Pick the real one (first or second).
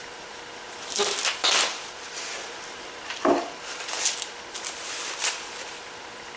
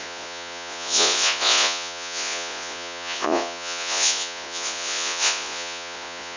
first